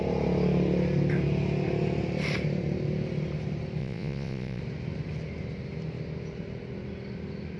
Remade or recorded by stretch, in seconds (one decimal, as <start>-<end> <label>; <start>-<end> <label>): 0.0-3.8 recorded; 3.8-4.6 remade; 4.6-7.6 recorded